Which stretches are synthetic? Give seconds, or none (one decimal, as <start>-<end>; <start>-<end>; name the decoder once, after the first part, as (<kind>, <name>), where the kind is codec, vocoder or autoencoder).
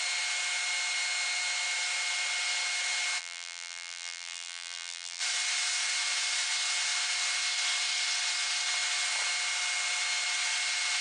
3.2-5.2 (vocoder, BigVGAN v2)